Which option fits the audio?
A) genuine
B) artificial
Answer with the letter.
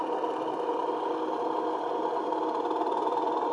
A